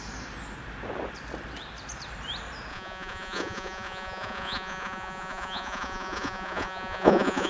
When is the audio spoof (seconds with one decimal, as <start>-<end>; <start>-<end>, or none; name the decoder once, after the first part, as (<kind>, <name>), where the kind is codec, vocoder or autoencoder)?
2.7-7.5 (vocoder, Vocos)